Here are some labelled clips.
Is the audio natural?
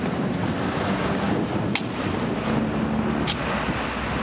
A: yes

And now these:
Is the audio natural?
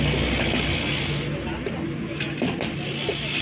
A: yes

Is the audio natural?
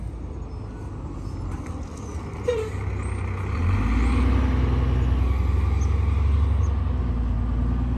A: yes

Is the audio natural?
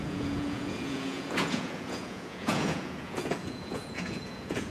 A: no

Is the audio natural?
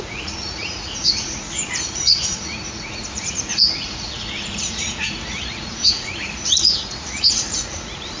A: no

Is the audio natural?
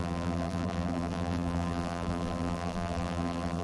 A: no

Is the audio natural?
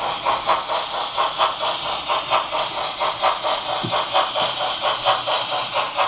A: yes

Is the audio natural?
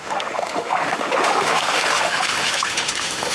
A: no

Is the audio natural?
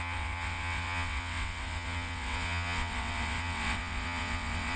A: no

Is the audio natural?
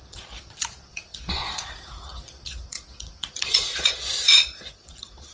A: no